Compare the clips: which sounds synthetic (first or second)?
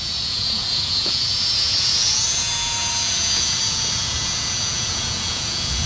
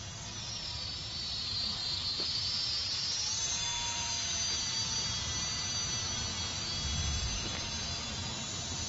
first